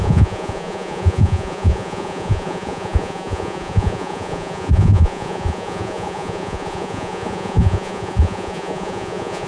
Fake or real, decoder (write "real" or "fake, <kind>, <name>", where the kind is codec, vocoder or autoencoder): fake, vocoder, Vocos